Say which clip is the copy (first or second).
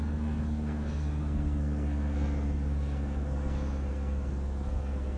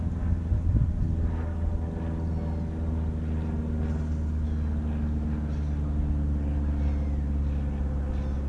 first